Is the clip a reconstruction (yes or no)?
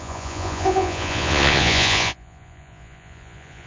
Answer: yes